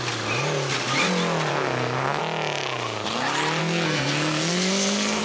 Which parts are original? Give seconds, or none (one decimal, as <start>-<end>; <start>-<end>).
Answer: 0.0-1.5; 2.2-3.6